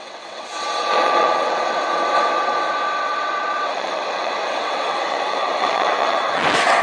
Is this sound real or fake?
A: fake